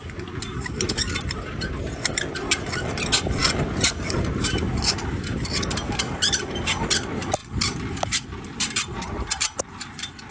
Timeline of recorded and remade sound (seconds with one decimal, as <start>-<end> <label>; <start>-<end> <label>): 0.0-10.3 recorded